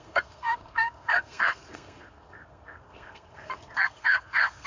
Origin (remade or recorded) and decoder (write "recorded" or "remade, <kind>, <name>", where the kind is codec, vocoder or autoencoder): remade, codec, SNAC